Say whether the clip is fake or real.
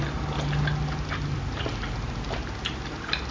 real